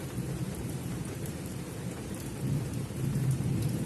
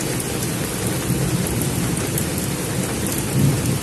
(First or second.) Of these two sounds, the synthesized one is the first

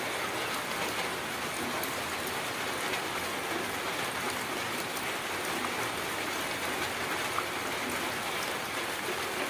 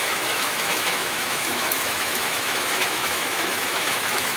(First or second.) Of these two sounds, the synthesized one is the second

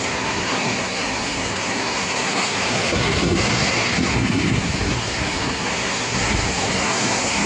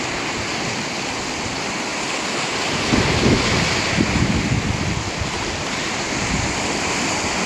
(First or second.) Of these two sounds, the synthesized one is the first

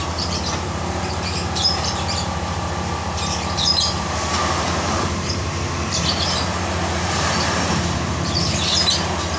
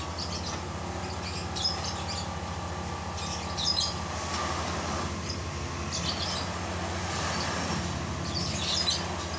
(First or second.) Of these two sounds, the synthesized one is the first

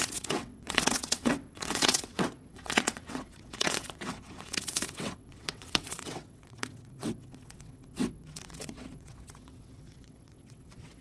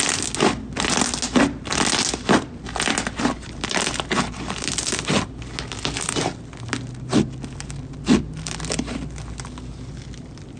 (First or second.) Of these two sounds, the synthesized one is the first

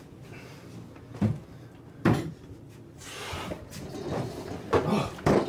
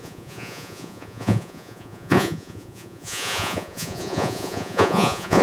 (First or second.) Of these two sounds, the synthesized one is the second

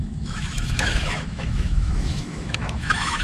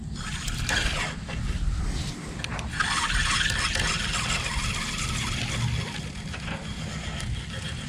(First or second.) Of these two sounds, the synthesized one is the first